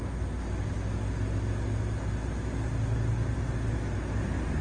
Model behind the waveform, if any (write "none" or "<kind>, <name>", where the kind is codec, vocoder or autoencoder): none